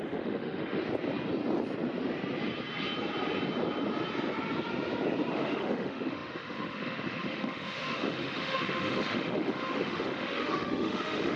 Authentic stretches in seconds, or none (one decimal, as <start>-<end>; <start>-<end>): 0.8-5.3